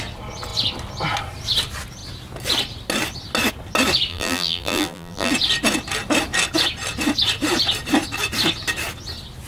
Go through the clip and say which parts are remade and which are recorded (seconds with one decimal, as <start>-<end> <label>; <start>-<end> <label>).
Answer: 0.0-4.1 recorded; 4.1-5.3 remade; 5.3-9.5 recorded